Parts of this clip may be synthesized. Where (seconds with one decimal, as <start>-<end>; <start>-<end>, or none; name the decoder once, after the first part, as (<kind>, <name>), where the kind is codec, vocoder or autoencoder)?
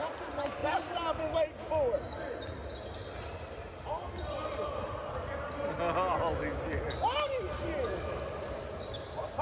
none